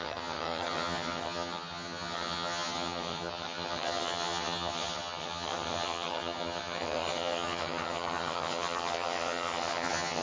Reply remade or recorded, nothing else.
remade